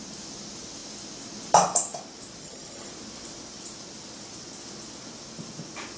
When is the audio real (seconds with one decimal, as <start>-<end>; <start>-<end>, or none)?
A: 0.0-2.4; 2.9-6.0